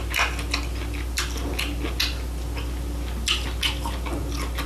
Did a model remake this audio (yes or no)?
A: no